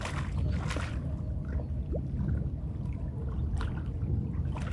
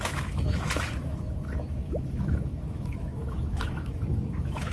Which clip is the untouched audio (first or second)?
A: first